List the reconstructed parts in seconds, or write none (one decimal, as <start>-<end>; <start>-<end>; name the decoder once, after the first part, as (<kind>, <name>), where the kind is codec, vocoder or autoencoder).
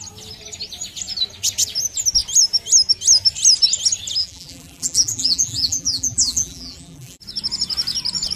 4.2-7.2 (vocoder, BigVGAN v2)